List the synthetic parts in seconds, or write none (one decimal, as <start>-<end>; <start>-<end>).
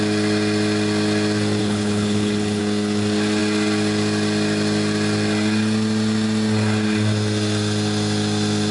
1.6-2.6